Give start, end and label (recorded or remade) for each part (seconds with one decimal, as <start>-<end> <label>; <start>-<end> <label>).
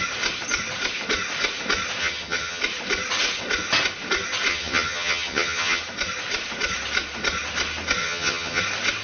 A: 0.0-2.0 recorded; 2.0-2.6 remade; 2.6-4.5 recorded; 4.5-5.8 remade; 5.8-8.0 recorded; 8.0-8.6 remade; 8.6-9.0 recorded